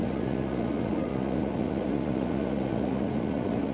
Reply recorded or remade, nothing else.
remade